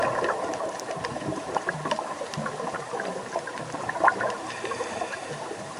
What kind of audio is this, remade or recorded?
remade